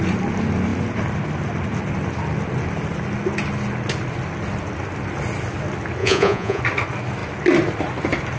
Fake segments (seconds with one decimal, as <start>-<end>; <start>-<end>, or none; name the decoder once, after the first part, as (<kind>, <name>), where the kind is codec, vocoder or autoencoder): 6.0-6.6 (vocoder, Vocos)